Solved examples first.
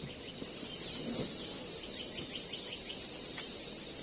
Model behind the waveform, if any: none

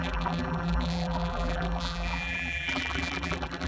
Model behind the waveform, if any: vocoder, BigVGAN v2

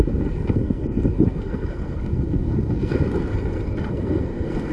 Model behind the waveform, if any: codec, SNAC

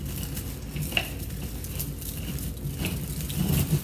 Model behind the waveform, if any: none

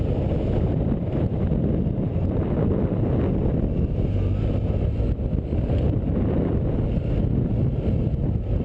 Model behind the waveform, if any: none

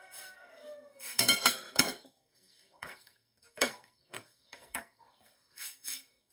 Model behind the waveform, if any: codec, SNAC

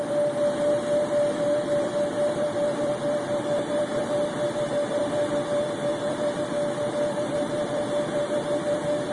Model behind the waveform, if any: vocoder, BigVGAN v2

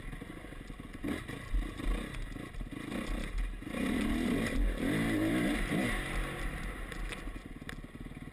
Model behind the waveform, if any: none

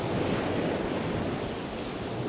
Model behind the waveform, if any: none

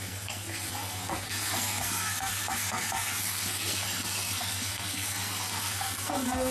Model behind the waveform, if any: codec, SNAC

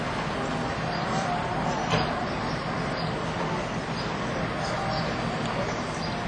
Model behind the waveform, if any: none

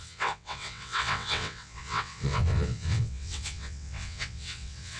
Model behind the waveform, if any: vocoder, WaveNeXt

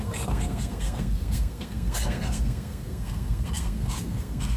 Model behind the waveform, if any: codec, SNAC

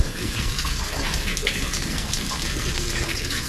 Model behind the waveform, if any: codec, SNAC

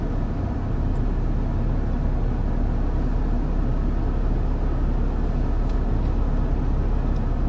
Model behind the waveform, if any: none